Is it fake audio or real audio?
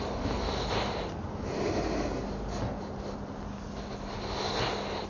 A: real